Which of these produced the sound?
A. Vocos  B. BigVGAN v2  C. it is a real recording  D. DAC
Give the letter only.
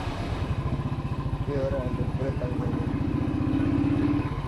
D